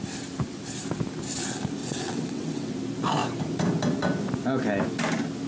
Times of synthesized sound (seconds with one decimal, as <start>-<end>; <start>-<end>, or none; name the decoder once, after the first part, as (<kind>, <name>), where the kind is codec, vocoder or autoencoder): 1.8-2.7 (vocoder, WaveNeXt)